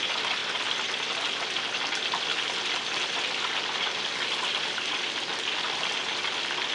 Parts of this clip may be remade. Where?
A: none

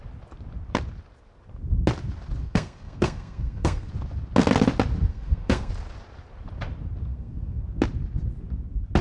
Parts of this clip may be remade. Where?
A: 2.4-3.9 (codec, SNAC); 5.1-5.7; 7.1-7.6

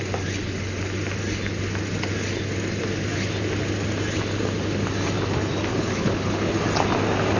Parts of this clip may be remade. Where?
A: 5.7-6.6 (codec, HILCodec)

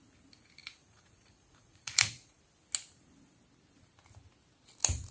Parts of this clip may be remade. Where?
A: 0.6-2.4 (vocoder, Vocos)

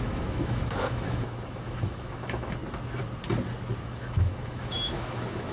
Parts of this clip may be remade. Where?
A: 0.0-2.6 (autoencoder, DAC-VAE); 3.8-5.5